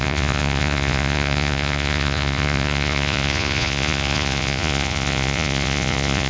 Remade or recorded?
remade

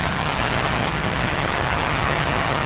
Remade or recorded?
remade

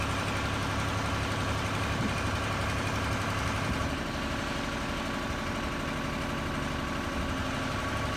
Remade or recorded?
recorded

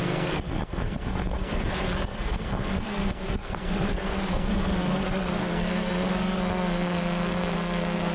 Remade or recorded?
remade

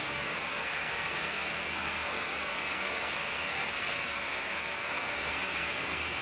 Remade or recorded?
remade